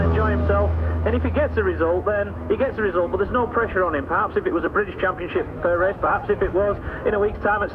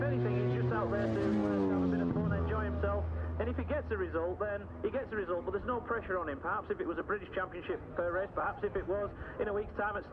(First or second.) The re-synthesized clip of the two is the first